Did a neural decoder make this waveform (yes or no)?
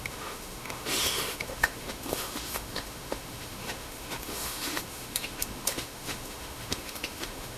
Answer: yes